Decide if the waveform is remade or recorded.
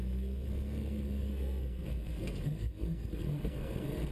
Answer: remade